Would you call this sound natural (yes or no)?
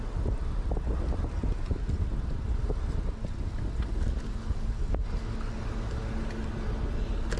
yes